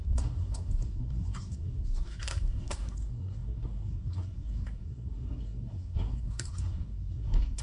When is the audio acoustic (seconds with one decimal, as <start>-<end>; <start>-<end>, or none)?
none